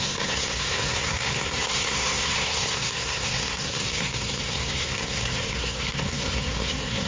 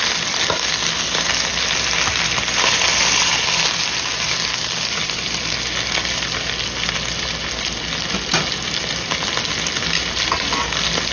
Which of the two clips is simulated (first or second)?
first